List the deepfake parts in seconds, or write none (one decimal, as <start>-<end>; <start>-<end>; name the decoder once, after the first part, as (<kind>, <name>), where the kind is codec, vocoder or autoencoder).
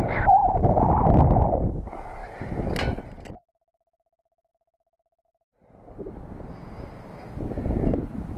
none